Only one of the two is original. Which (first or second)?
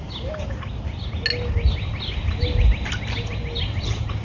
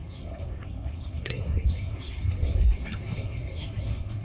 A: first